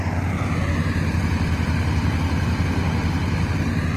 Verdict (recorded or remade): recorded